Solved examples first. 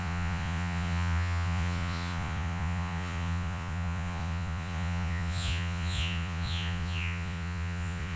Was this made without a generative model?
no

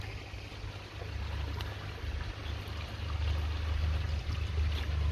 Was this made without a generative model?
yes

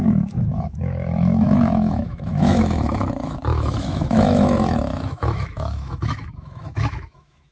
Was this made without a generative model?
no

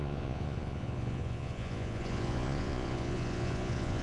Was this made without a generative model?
no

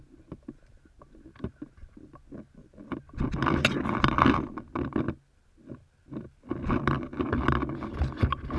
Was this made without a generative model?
yes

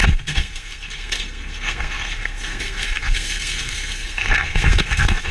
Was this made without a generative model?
no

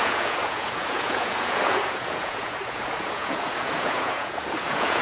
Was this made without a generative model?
no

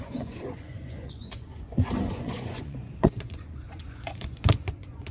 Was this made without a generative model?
no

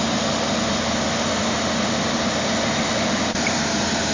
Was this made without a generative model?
yes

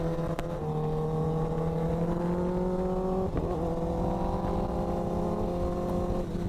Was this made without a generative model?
yes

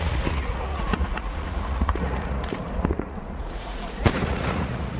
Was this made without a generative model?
no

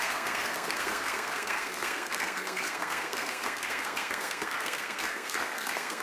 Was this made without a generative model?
no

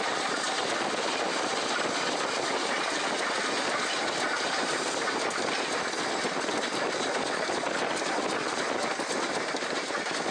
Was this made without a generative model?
yes